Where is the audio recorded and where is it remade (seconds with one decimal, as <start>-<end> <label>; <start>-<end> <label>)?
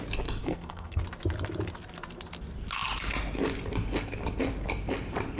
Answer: 0.0-0.4 recorded; 0.4-1.0 remade; 1.0-5.4 recorded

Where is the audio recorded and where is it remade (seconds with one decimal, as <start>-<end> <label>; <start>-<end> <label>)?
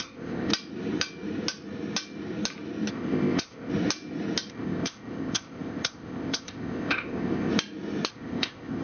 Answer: 0.0-0.5 remade; 0.5-2.9 recorded; 2.9-3.7 remade; 3.7-4.5 recorded; 4.5-7.5 remade; 7.5-8.1 recorded; 8.1-8.8 remade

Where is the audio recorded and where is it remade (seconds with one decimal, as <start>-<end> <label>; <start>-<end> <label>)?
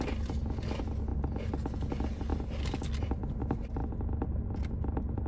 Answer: 0.0-5.3 recorded